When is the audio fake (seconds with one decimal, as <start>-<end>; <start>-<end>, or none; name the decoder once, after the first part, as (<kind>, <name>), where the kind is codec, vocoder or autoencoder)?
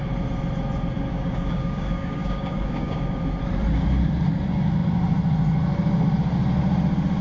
1.1-3.2 (codec, DAC)